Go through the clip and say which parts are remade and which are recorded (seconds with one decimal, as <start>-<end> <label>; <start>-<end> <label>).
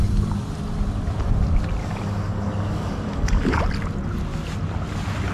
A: 0.0-1.8 recorded; 1.8-3.6 remade; 3.6-5.3 recorded